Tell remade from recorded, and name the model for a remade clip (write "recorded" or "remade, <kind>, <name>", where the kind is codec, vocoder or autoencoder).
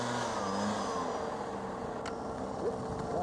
recorded